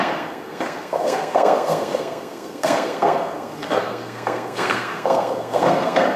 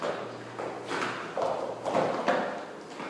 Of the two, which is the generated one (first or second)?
first